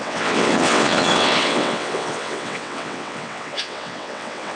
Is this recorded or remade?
remade